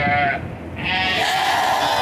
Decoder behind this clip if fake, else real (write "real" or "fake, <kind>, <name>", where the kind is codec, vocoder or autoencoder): real